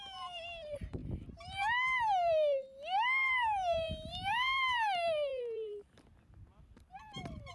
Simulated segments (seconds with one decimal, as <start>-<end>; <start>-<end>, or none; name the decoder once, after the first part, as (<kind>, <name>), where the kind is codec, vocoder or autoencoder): 0.0-7.5 (vocoder, BigVGAN v2)